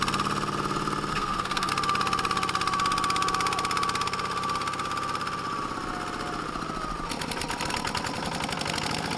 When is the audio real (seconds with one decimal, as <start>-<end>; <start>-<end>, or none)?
0.0-1.1; 1.7-9.2